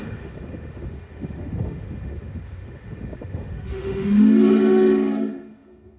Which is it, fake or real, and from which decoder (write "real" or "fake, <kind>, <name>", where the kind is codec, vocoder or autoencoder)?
fake, autoencoder, DAC-VAE